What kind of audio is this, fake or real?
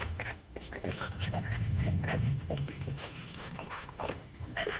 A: fake